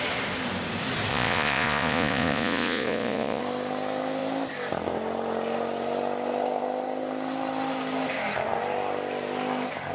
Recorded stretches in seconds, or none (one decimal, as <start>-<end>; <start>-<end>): 0.0-1.1; 3.4-9.9

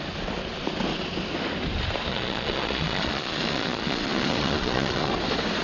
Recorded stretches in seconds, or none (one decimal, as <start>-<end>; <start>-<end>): 0.0-2.1; 5.1-5.6

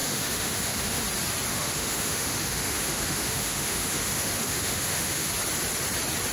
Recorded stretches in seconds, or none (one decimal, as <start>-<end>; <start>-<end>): 1.0-1.5; 5.3-6.3

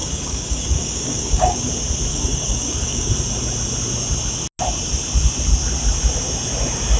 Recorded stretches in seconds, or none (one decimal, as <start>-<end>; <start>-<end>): 1.7-2.1; 3.1-7.0